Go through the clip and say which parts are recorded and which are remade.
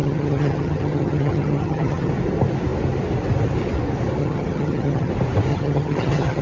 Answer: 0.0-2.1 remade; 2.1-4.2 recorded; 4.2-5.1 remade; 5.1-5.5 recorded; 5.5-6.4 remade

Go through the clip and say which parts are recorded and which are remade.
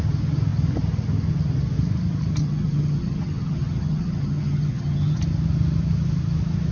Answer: 0.0-2.4 recorded; 2.4-5.2 remade; 5.2-6.7 recorded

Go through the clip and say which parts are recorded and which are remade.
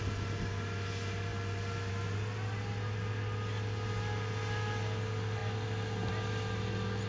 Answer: 0.0-7.1 recorded